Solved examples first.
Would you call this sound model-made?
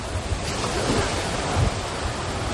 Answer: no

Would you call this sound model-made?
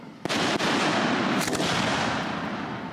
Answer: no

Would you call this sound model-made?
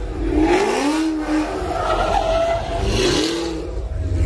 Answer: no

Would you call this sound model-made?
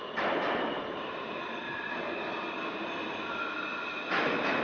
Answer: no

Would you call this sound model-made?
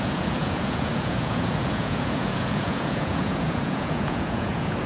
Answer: yes